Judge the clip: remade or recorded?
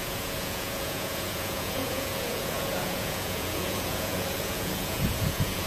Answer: remade